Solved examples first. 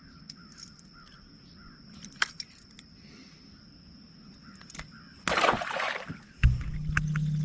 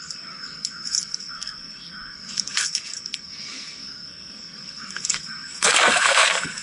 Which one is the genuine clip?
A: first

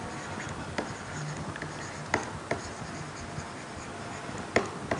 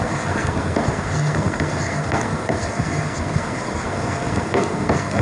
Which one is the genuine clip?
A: first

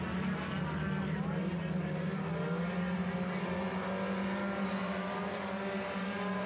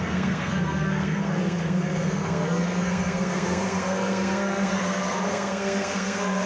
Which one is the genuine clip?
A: first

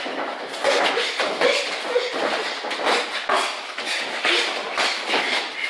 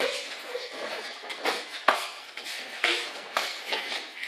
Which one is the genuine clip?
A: first